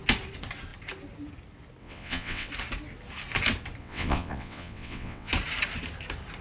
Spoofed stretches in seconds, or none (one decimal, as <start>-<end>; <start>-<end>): 1.8-2.5; 3.8-5.3